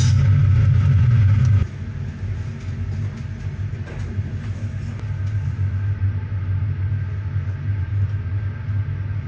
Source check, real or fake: real